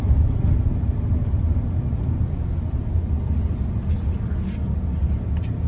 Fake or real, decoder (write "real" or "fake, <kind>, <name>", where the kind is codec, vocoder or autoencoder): real